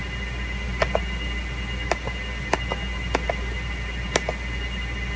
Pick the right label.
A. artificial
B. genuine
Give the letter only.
B